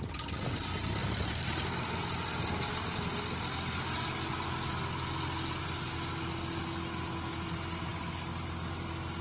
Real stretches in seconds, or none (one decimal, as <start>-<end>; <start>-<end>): 0.0-1.0; 1.9-9.2